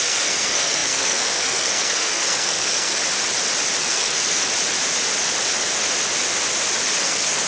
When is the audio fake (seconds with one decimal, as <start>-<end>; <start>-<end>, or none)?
0.0-3.0; 3.8-4.4; 7.0-7.5